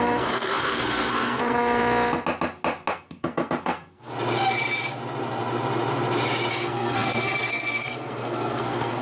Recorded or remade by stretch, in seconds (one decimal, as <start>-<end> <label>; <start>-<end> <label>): 0.0-1.8 remade; 1.8-2.9 recorded; 2.9-4.1 remade; 4.1-6.5 recorded; 6.5-9.0 remade